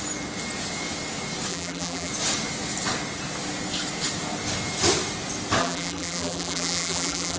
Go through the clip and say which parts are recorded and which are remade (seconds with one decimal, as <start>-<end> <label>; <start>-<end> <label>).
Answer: 0.0-1.5 recorded; 1.5-2.1 remade; 2.1-5.6 recorded; 5.6-7.4 remade